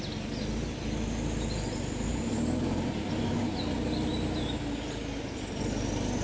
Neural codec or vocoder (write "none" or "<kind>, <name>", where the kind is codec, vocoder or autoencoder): none